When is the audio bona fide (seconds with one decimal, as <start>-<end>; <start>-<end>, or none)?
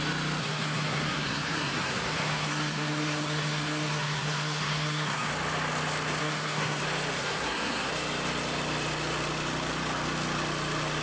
0.0-0.4; 5.3-6.2; 6.8-7.2; 7.9-11.0